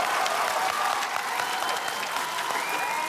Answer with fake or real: real